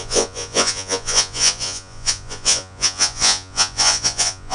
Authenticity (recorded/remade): remade